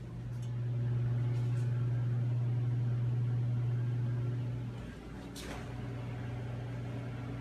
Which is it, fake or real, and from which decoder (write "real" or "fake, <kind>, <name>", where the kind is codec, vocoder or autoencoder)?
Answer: real